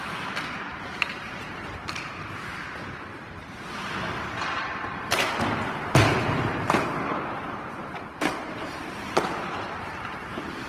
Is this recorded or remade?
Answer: remade